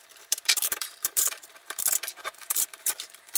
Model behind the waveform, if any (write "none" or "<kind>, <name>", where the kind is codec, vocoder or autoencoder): vocoder, BigVGAN v2